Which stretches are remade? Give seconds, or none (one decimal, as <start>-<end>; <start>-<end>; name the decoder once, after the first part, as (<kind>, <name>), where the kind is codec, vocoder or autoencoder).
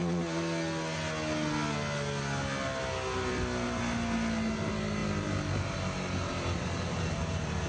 none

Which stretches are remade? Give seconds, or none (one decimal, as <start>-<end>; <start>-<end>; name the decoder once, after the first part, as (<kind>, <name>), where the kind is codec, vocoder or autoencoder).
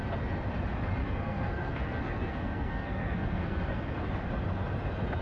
1.0-4.1 (codec, SNAC)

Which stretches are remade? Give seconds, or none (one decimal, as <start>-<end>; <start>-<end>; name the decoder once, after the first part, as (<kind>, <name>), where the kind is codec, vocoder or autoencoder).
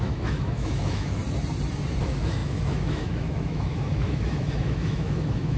0.0-1.2 (autoencoder, DAC-VAE); 2.0-5.6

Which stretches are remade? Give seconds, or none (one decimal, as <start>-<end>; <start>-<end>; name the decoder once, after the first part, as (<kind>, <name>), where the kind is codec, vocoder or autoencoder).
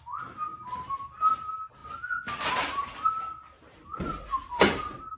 none